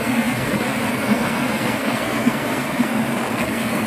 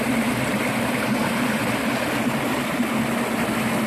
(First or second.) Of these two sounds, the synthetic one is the first